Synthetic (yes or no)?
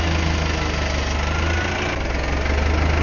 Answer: no